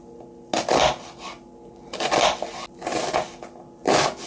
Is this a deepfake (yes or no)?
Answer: no